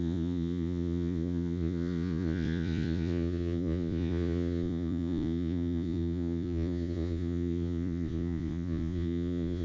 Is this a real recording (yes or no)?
no